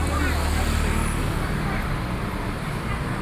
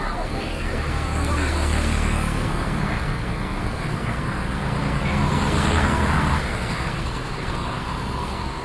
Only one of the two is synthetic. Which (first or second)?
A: second